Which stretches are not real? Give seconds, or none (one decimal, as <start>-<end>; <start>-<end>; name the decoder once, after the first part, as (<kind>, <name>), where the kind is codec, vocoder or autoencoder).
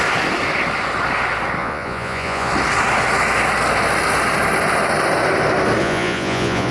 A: 1.6-2.5 (vocoder, Vocos); 5.8-6.7